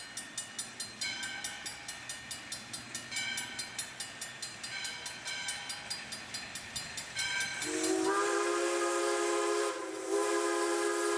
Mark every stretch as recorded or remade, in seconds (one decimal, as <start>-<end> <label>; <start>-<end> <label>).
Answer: 0.0-11.2 recorded